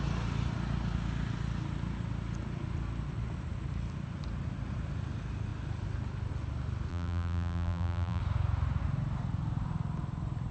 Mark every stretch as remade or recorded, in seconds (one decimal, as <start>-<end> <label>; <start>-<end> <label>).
0.0-6.9 recorded; 6.9-8.2 remade; 8.2-10.5 recorded